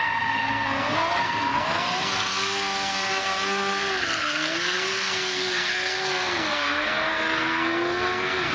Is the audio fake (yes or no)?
yes